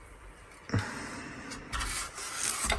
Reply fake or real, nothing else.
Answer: real